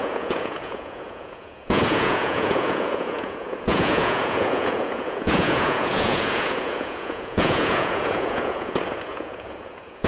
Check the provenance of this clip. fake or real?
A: fake